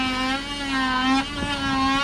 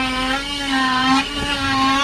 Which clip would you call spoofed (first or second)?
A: second